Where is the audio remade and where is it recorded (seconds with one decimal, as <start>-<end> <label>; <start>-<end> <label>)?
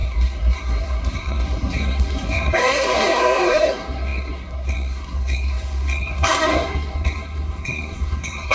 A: 0.0-8.5 remade